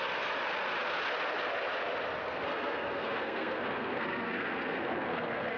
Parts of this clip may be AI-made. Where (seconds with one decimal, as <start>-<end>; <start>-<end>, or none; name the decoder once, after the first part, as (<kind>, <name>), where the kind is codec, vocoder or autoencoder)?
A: 2.2-5.6 (codec, SNAC)